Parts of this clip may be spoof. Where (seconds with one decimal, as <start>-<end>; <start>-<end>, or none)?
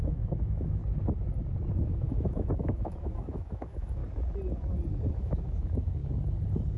0.0-0.8; 1.7-4.0; 5.1-6.0